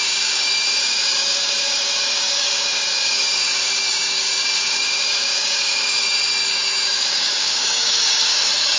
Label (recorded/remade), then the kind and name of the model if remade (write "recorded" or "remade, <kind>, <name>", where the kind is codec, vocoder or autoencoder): remade, codec, DAC